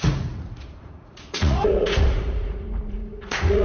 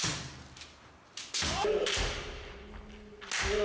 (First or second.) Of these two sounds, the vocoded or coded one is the first